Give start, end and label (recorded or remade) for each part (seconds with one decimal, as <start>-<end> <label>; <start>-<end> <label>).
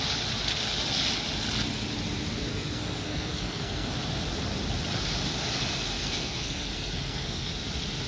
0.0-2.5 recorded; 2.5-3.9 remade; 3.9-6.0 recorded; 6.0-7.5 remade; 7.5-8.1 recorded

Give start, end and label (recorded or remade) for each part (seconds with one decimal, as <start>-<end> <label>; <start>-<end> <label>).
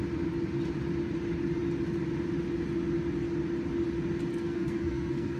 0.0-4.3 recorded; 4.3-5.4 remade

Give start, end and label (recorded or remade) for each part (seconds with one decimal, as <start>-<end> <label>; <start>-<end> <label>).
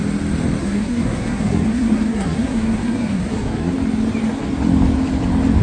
0.0-0.6 recorded; 0.6-3.7 remade; 3.7-5.6 recorded